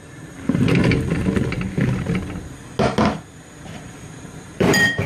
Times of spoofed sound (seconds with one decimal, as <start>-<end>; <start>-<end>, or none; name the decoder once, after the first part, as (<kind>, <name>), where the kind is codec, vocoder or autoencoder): 0.0-0.8 (vocoder, BigVGAN v2); 3.6-5.1